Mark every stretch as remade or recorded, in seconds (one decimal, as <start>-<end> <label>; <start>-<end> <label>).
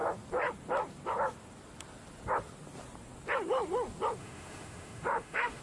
0.0-4.2 recorded; 4.2-5.6 remade